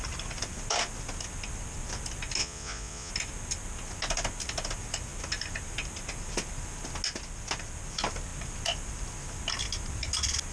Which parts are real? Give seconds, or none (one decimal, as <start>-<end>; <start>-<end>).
0.0-2.4; 3.1-10.5

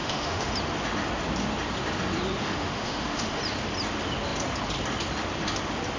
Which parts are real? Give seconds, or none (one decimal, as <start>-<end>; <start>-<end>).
0.5-2.4; 3.4-6.0

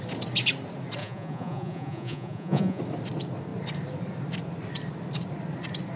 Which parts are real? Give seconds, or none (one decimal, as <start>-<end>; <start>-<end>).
0.0-1.0; 2.8-6.0

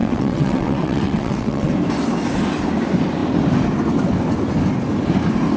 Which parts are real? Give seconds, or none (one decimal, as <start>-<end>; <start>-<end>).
1.7-5.6

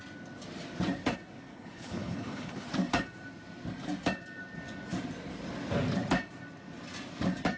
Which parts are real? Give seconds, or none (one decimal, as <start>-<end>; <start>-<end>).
0.0-1.5; 2.7-7.6

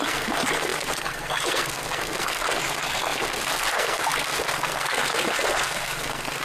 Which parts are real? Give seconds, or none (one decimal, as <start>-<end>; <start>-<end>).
none

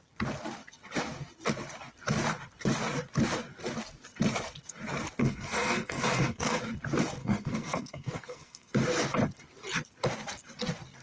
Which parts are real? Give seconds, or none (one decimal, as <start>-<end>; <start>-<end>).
0.0-5.2; 6.6-7.2; 8.7-11.0

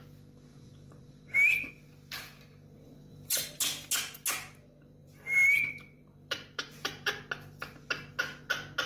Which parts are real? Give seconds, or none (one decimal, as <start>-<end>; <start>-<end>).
0.0-0.5; 1.7-3.1; 3.6-5.0; 7.1-8.9